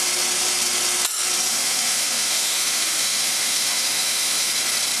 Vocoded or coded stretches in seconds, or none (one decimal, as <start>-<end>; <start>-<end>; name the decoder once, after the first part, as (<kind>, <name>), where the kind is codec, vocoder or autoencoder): 1.5-4.5 (autoencoder, DAC-VAE)